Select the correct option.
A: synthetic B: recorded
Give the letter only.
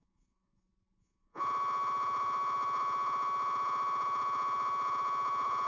A